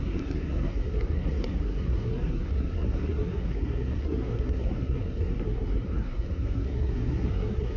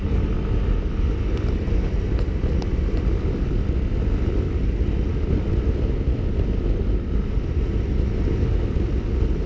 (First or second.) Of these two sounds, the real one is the second